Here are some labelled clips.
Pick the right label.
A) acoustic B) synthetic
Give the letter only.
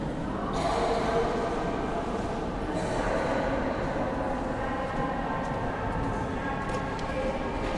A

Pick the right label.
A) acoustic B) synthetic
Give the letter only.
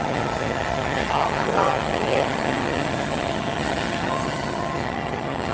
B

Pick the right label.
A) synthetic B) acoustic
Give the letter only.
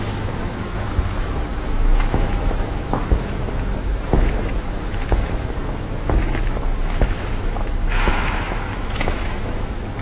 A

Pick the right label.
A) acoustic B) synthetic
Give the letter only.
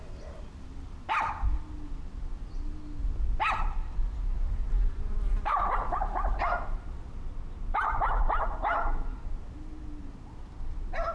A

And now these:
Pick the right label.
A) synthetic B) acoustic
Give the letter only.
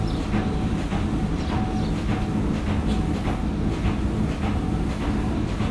B